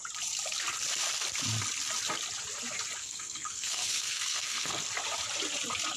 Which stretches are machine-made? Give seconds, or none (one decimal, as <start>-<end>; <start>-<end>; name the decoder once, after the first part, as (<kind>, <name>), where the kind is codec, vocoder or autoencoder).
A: 3.0-4.8 (codec, SNAC)